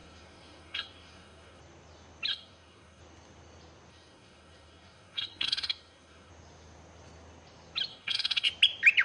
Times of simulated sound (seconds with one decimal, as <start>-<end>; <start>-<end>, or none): 0.0-1.6; 2.3-3.0; 3.9-6.3; 7.9-8.5